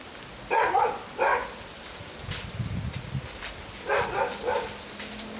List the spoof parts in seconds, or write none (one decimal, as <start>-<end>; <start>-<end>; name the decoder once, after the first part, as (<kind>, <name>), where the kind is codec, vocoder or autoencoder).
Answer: none